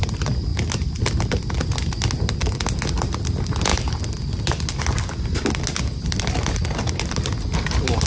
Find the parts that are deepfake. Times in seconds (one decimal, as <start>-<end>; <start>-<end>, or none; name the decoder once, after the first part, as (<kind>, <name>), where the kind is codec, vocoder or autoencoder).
none